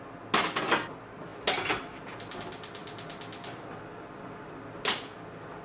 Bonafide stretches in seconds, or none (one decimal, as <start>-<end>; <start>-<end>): 0.0-5.6